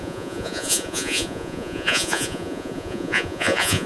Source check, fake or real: fake